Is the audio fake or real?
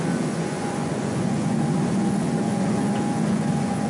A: fake